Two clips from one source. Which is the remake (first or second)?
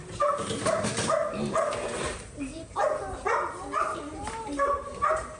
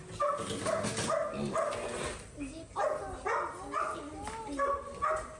first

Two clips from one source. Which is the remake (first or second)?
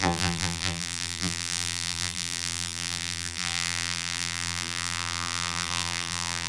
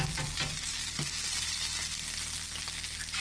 first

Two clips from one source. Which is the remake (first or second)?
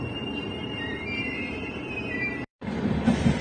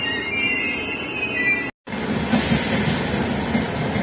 first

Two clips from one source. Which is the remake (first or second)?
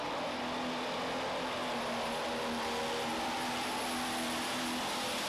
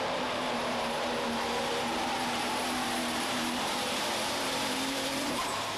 second